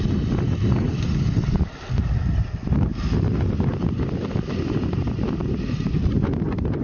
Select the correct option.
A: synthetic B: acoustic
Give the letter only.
B